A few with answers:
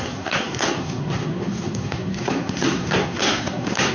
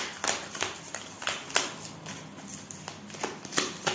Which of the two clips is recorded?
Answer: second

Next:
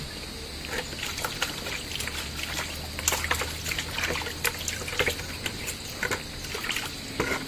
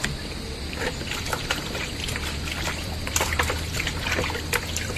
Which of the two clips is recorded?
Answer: first